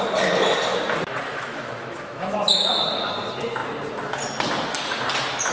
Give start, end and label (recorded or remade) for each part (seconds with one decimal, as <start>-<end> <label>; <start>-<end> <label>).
0.0-1.3 recorded; 1.3-2.7 remade; 2.7-5.5 recorded